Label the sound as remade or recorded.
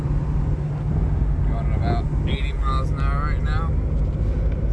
recorded